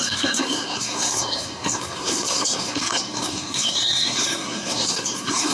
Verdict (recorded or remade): remade